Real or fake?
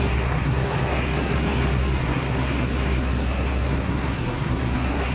fake